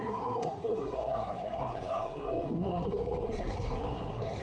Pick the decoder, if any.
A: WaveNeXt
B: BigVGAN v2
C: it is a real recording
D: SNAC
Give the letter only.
D